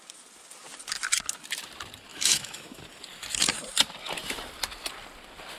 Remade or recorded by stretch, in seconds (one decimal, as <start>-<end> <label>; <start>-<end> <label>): 0.0-2.1 recorded; 2.1-2.8 remade; 2.8-5.6 recorded